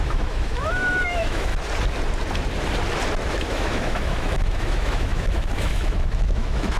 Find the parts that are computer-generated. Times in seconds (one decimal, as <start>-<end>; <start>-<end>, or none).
0.0-1.5; 3.3-6.8